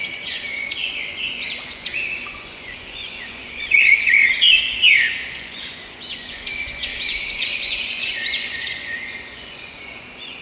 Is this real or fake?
fake